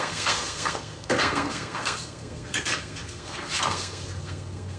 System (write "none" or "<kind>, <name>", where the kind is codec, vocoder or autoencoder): codec, SNAC